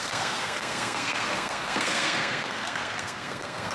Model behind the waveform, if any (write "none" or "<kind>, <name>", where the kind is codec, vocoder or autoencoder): codec, SNAC